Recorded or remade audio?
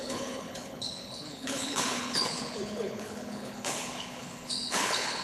remade